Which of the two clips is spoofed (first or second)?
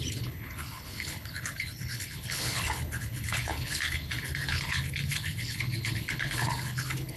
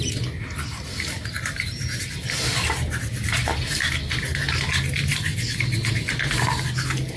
first